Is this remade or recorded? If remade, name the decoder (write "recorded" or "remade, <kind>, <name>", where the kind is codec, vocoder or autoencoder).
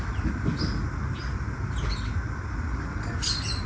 recorded